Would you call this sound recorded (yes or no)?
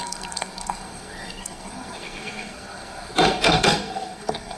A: no